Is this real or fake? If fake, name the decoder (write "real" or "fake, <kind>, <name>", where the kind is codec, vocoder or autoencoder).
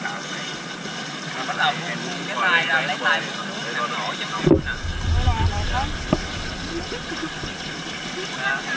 real